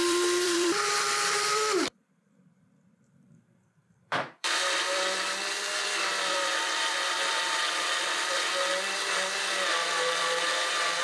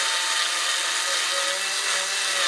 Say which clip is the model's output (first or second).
first